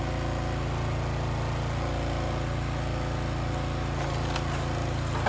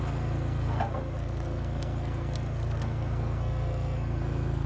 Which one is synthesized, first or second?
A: second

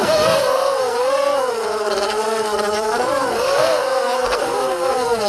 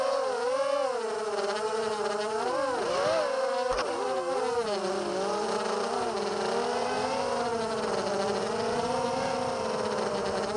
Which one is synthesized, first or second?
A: first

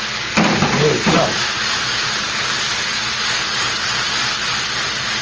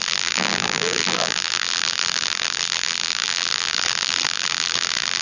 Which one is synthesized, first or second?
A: second